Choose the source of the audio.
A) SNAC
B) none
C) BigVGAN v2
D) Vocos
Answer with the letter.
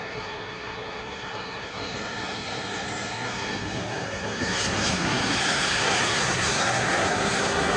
A